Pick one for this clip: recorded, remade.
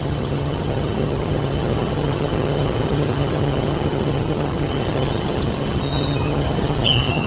remade